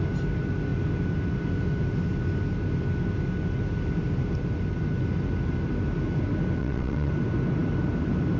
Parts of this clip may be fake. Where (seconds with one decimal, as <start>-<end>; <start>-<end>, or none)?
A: 6.6-7.1

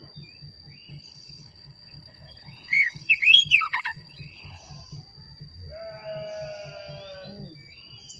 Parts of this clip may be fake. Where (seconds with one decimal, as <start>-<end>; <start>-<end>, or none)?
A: 0.9-4.7